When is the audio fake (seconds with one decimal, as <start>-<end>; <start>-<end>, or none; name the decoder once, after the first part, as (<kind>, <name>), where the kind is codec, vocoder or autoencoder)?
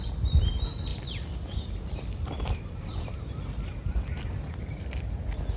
none